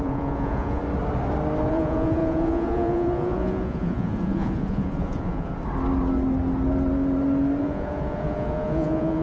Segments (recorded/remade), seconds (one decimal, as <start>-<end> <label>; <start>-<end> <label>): 0.0-0.8 remade; 0.8-1.7 recorded; 1.7-5.5 remade; 5.5-7.6 recorded; 7.6-9.2 remade